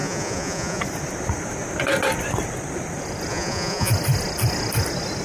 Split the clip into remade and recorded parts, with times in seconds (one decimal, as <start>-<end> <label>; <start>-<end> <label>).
0.0-0.8 remade; 0.8-3.3 recorded; 3.3-3.9 remade; 3.9-5.2 recorded